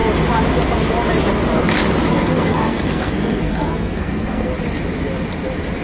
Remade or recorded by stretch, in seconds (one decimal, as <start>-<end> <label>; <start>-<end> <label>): 0.0-2.1 recorded; 2.1-4.5 remade; 4.5-5.8 recorded